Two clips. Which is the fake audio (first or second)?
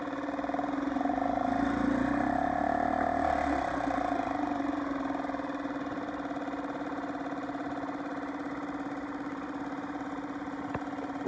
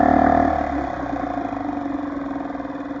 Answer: first